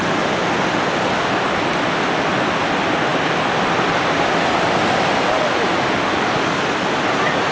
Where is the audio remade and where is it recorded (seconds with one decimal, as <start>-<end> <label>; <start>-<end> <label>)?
0.0-3.1 recorded; 3.1-5.3 remade; 5.3-7.5 recorded